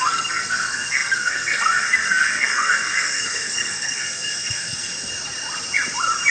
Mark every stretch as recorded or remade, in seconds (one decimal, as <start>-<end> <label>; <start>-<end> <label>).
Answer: 0.0-4.9 remade; 4.9-6.3 recorded